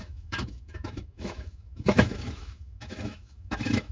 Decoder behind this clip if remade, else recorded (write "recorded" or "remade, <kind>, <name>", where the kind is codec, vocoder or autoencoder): remade, autoencoder, DAC-VAE